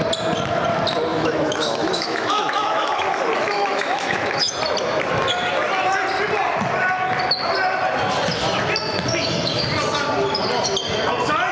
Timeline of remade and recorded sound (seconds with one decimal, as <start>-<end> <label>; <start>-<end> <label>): 0.0-1.1 recorded; 1.1-4.6 remade; 4.6-11.5 recorded